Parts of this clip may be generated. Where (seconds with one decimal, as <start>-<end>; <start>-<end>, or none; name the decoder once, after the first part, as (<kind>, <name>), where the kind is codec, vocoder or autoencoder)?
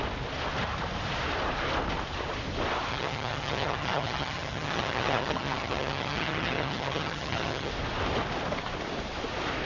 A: 2.9-7.7 (vocoder, HiFi-GAN)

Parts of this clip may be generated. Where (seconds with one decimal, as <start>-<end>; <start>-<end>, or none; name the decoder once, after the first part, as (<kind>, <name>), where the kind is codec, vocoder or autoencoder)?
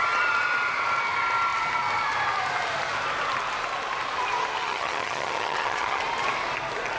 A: 4.6-6.0 (vocoder, HiFi-GAN)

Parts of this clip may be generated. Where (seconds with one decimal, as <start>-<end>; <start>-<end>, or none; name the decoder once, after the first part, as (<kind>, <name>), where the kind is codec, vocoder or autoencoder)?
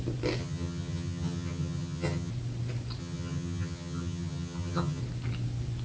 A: 0.4-2.3 (vocoder, HiFi-GAN); 3.0-5.0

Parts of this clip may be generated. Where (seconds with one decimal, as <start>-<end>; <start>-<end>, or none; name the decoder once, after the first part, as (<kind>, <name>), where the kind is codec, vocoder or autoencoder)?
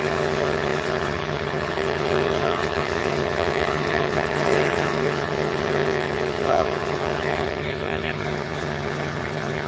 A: 0.0-9.7 (vocoder, HiFi-GAN)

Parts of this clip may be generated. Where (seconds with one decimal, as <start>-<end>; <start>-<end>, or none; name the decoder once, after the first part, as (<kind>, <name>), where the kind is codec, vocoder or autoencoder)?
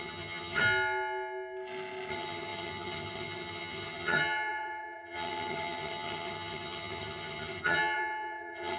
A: 0.0-0.6 (vocoder, HiFi-GAN); 2.1-8.8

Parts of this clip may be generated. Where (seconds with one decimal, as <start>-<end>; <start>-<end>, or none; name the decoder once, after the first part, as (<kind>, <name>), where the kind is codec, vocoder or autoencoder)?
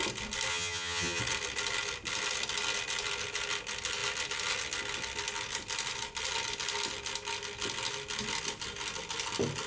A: 0.5-1.2 (vocoder, HiFi-GAN)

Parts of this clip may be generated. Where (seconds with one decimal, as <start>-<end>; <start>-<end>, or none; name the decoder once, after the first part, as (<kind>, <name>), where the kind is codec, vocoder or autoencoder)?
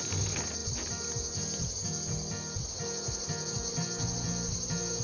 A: none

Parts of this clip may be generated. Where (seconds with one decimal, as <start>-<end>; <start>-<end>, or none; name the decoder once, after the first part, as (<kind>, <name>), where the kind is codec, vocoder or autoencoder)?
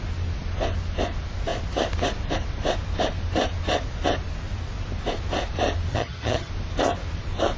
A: 5.9-6.5 (vocoder, HiFi-GAN)